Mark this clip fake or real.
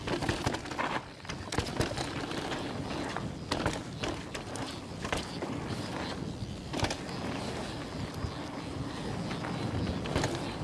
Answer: real